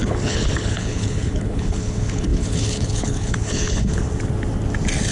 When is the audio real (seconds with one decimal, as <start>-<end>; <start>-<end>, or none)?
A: 4.1-5.1